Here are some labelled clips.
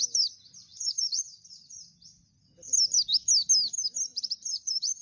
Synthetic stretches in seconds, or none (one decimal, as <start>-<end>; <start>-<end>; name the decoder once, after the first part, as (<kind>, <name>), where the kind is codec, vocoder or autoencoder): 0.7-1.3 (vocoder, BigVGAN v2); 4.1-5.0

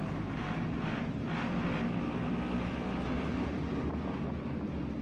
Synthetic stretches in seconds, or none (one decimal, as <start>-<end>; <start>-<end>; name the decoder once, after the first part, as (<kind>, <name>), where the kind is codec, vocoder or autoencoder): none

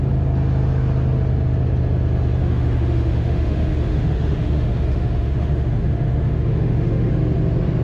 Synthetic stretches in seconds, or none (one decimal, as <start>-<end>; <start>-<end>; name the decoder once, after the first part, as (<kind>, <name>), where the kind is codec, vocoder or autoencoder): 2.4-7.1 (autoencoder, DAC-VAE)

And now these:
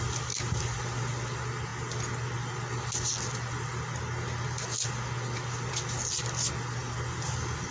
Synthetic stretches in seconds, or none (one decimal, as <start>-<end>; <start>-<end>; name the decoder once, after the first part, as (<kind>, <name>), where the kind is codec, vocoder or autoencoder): none

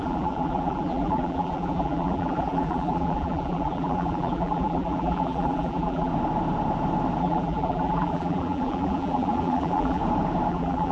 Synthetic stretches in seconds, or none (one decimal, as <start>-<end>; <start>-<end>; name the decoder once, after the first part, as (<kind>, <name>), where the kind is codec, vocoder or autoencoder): 0.0-6.1 (vocoder, BigVGAN v2); 7.2-10.0; 10.5-10.9

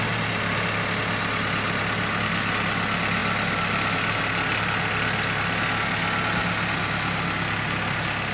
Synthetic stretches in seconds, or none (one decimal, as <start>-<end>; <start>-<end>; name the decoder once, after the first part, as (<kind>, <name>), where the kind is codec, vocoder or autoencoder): none

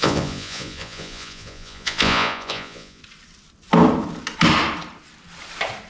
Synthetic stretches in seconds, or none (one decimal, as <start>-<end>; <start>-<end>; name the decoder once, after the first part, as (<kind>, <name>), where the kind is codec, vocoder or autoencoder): 0.0-3.0 (vocoder, Vocos)

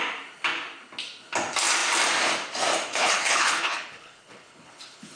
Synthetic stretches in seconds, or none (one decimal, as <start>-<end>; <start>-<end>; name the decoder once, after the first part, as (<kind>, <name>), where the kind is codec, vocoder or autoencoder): 2.9-5.2 (codec, HILCodec)